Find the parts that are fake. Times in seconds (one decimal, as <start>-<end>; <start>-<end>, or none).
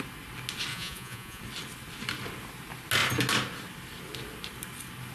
0.7-1.4